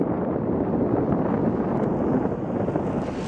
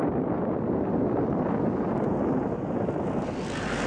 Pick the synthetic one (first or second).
first